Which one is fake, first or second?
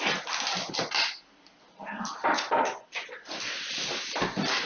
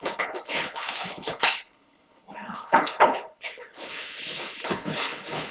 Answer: second